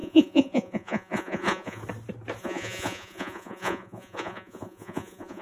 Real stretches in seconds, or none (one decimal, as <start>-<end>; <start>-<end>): 1.8-2.4